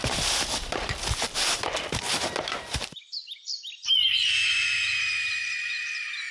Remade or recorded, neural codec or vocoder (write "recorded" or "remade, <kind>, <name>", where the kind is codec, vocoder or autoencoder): remade, vocoder, BigVGAN v2